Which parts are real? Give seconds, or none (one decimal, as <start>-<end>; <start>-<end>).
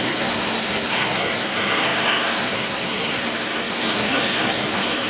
none